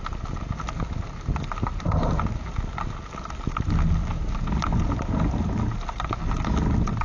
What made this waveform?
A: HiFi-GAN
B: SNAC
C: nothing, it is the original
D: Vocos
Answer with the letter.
C